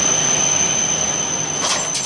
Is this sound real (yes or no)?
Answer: yes